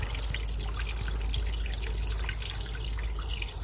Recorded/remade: recorded